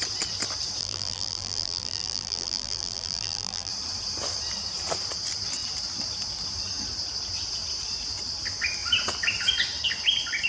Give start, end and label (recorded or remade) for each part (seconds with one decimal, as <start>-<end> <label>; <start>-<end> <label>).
0.0-0.8 recorded; 0.8-3.7 remade; 3.7-10.5 recorded